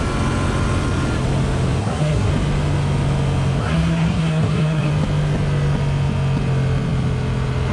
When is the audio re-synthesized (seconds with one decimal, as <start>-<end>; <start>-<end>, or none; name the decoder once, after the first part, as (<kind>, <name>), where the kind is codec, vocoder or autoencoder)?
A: 1.8-2.3 (codec, SNAC); 3.6-4.9